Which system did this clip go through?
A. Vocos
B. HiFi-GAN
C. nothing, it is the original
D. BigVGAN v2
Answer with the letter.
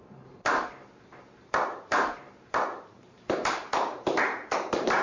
D